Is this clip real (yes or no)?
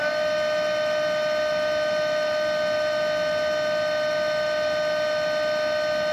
yes